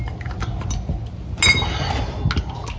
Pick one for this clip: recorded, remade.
recorded